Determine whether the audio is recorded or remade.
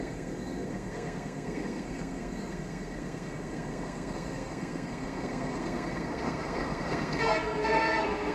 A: remade